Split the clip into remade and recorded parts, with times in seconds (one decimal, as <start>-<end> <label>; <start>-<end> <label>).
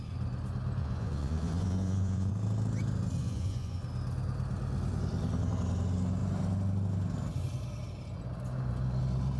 0.0-0.8 recorded; 0.8-2.3 remade; 2.3-3.2 recorded; 3.2-3.8 remade; 3.8-9.4 recorded